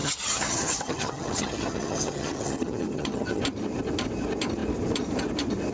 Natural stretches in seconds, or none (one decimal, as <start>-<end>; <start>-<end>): 3.4-5.7